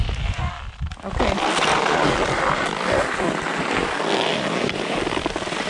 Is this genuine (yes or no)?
yes